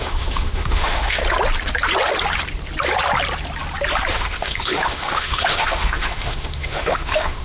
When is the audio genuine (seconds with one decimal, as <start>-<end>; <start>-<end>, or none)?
1.2-4.1